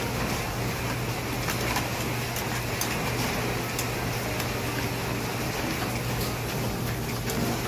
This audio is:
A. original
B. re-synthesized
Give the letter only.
A